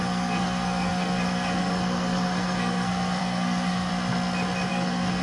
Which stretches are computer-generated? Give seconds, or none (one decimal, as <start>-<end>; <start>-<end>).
0.0-3.9; 4.7-5.2